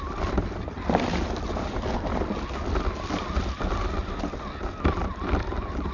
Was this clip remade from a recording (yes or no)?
no